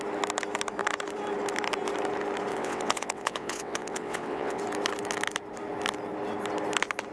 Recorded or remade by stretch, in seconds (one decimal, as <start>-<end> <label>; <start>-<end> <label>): 0.0-2.5 recorded; 2.5-4.6 remade; 4.6-7.1 recorded